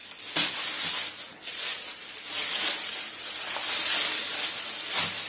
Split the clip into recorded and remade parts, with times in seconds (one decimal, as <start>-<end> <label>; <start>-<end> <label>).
0.0-5.3 recorded